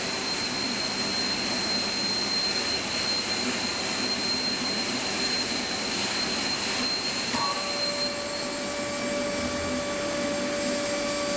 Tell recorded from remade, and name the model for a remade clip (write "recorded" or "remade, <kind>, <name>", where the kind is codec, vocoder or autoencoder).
recorded